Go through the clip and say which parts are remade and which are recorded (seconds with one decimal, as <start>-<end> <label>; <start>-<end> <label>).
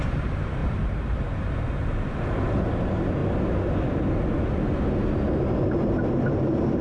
0.0-3.2 remade; 3.2-5.2 recorded; 5.2-6.8 remade